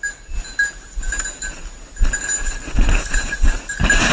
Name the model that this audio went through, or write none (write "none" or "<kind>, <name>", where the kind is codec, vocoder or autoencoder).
none